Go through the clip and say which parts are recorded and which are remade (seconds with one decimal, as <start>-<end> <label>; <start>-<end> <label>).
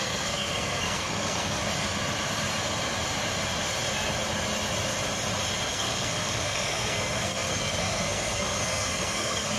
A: 0.0-1.6 remade; 1.6-5.7 recorded; 5.7-9.6 remade